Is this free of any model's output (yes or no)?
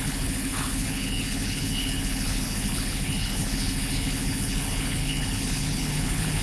no